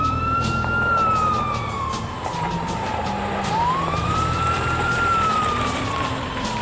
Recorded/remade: remade